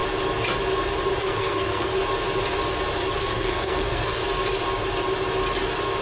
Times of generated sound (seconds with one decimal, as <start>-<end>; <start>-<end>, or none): 1.2-1.9; 3.2-4.2